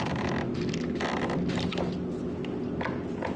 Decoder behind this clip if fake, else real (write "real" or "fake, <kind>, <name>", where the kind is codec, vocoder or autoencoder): real